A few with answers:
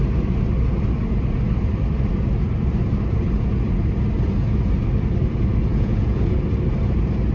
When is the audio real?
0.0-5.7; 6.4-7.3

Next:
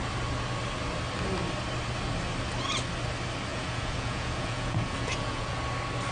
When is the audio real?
0.0-3.5; 5.6-6.1

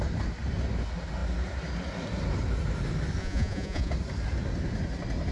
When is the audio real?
0.0-3.2; 3.9-5.3

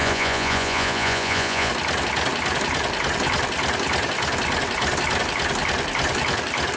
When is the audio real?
1.7-6.8